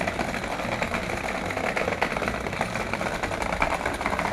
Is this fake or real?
real